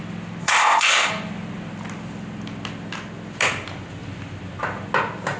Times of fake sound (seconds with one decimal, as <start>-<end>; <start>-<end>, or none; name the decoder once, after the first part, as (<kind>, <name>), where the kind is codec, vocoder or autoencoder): 0.4-1.1 (codec, ZipCodec)